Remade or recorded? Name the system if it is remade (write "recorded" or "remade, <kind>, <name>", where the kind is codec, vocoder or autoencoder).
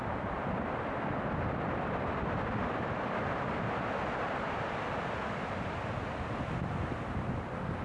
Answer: recorded